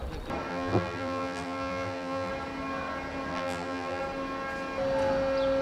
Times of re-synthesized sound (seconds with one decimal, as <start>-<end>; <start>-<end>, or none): 0.5-2.3; 3.3-4.0